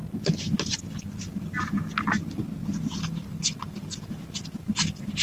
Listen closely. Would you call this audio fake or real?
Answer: real